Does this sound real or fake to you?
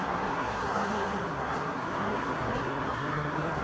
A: fake